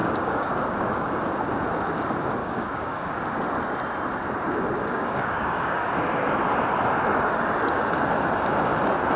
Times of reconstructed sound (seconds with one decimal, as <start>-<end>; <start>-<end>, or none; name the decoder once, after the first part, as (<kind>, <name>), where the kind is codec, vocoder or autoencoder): 0.0-1.2 (codec, DAC); 2.4-3.1; 4.8-5.9